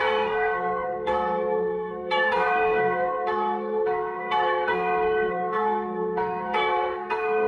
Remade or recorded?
remade